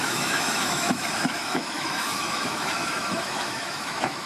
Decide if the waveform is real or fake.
fake